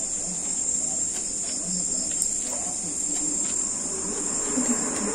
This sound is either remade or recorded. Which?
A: recorded